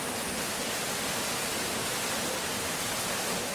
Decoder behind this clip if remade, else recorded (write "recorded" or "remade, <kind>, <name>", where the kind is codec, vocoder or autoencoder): recorded